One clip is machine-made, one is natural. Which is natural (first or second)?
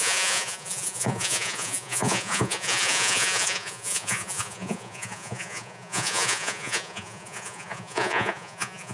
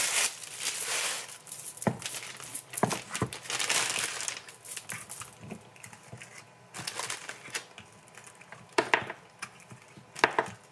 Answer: second